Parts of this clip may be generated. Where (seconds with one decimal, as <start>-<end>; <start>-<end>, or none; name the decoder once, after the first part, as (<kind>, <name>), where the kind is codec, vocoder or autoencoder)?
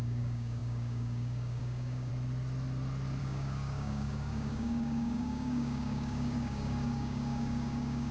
0.0-2.1 (codec, DAC); 3.2-8.1